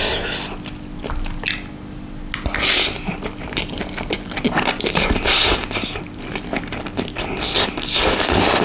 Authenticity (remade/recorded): recorded